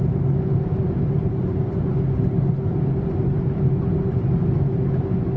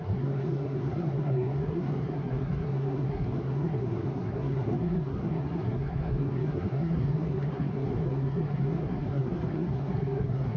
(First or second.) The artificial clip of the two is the second